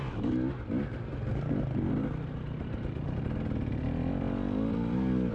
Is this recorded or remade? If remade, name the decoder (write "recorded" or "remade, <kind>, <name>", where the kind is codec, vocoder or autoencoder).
recorded